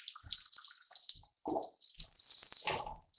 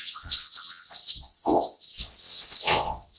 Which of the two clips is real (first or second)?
first